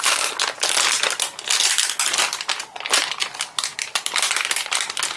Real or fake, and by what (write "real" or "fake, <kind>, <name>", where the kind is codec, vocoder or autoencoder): real